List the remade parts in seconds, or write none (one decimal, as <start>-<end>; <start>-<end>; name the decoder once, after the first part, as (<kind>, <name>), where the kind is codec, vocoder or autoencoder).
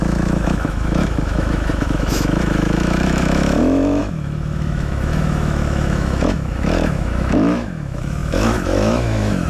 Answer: 0.0-9.5 (autoencoder, DAC-VAE)